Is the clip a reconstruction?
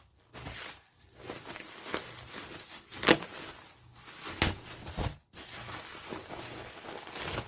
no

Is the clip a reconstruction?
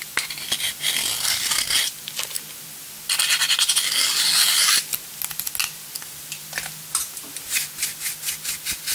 no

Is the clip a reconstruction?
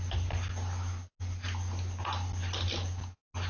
no